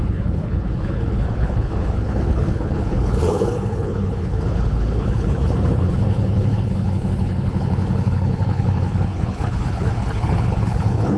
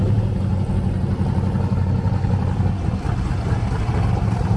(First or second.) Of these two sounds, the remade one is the first